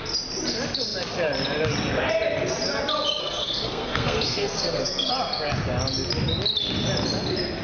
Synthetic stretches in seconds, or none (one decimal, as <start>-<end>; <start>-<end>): 3.2-5.1